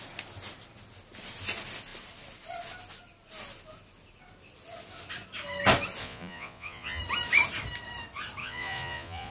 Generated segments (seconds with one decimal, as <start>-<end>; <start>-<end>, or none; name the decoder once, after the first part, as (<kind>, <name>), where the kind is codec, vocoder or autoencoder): 6.0-7.0 (vocoder, Vocos); 8.4-9.3